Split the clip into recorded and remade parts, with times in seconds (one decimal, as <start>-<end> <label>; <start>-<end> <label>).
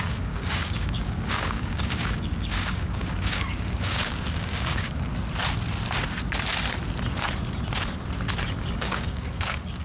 0.0-5.1 remade; 5.1-8.6 recorded; 8.6-9.8 remade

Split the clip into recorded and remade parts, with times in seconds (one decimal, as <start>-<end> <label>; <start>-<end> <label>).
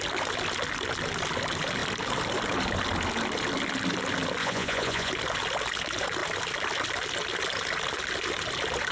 0.0-4.4 recorded; 4.4-5.1 remade; 5.1-8.9 recorded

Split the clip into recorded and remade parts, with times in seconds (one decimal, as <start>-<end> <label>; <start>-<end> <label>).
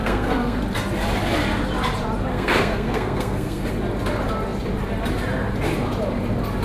0.0-0.6 remade; 0.6-2.3 recorded; 2.3-3.7 remade; 3.7-6.6 recorded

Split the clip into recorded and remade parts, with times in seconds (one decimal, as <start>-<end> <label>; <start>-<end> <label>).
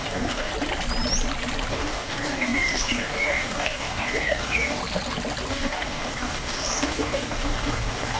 0.0-0.5 remade; 0.5-1.7 recorded; 1.7-4.8 remade; 4.8-5.5 recorded; 5.5-8.2 remade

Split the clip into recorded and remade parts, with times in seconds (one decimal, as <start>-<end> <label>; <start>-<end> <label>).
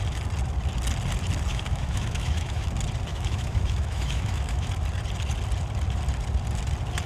0.0-1.5 recorded; 1.5-2.7 remade; 2.7-3.1 recorded; 3.1-4.7 remade; 4.7-7.1 recorded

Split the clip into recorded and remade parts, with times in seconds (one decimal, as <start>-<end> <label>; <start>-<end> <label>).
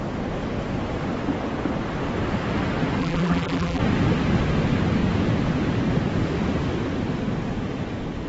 0.0-3.0 recorded; 3.0-3.8 remade; 3.8-8.3 recorded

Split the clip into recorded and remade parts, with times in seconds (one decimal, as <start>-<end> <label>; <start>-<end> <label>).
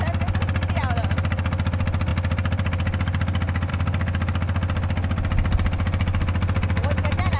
0.0-7.4 recorded